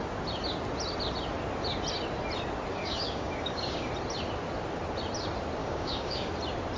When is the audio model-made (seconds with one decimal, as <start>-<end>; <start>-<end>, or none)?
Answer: 2.7-3.9; 5.6-6.3